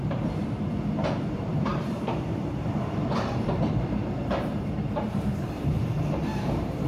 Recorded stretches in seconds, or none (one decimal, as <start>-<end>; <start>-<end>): 0.4-1.2